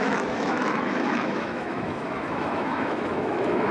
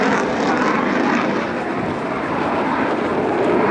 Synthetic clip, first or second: first